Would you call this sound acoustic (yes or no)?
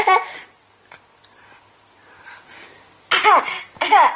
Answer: yes